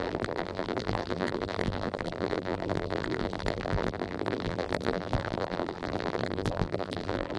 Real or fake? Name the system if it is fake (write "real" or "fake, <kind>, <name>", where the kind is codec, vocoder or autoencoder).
fake, vocoder, BigVGAN v2